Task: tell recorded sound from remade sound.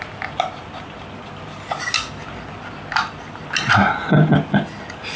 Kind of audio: recorded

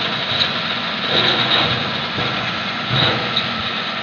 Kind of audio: remade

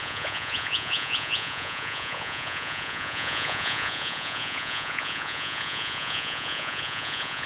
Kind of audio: remade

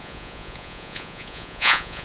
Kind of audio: remade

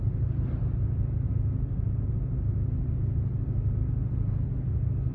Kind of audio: recorded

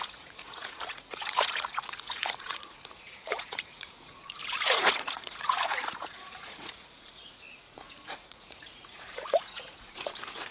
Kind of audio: remade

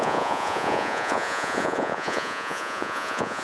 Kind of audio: remade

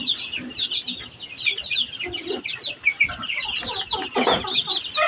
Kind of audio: recorded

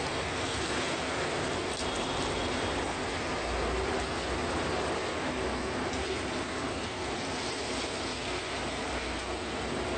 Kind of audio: recorded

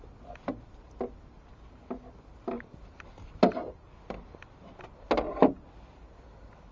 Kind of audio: recorded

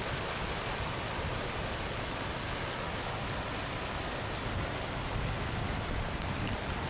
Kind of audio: recorded